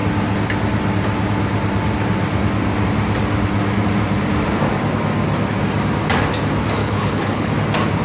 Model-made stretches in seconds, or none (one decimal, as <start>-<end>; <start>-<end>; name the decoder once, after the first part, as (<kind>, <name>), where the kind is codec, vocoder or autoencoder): 6.8-7.5 (codec, HILCodec)